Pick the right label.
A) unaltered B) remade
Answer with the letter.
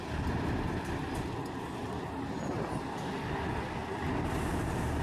A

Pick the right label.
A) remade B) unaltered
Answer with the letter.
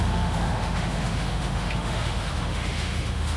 A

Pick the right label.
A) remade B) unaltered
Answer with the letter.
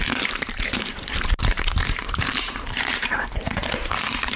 A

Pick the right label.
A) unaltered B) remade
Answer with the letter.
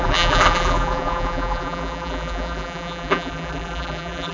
B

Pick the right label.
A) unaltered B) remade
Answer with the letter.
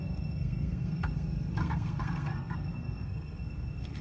B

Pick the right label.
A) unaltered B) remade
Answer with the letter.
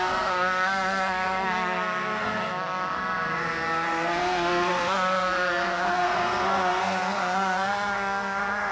B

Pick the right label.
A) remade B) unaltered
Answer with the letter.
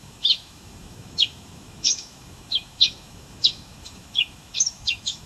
A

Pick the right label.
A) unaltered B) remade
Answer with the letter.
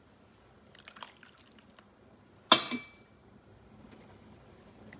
A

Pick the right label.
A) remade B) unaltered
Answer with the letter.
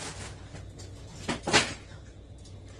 B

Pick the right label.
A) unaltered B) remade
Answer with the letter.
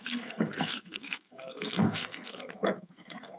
B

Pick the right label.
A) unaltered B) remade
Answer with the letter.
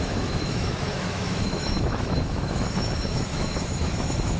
B